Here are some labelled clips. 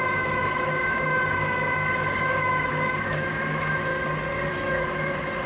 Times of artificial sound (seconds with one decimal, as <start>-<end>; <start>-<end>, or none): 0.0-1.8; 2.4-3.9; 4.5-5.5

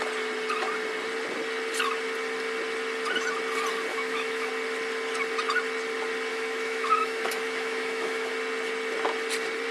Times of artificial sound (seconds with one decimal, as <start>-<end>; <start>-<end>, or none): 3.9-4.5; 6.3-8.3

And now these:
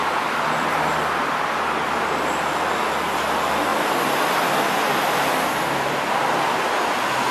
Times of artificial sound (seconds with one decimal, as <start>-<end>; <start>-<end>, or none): none